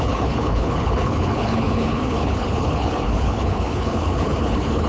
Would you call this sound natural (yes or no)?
no